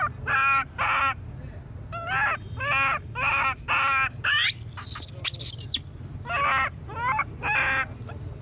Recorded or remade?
recorded